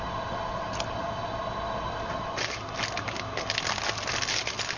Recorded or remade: recorded